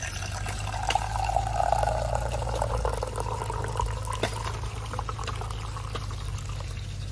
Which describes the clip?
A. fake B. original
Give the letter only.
B